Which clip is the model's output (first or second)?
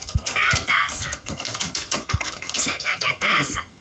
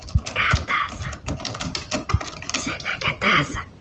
first